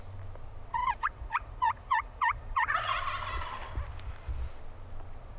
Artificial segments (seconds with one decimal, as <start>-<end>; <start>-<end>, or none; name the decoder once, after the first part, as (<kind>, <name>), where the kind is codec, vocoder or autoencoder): 0.7-3.0 (vocoder, Vocos)

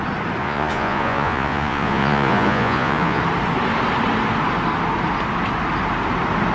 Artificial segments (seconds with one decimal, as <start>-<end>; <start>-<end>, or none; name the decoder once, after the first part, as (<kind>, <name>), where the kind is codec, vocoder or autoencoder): 0.4-3.2 (vocoder, Vocos)

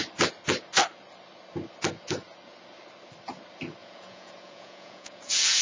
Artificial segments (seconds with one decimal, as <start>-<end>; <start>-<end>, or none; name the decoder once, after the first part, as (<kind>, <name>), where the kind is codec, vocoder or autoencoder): 3.8-5.6 (vocoder, Vocos)

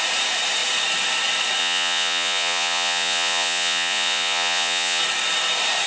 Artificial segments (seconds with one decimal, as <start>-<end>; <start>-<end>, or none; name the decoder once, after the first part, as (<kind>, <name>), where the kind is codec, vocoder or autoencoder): 1.6-5.0 (vocoder, Vocos)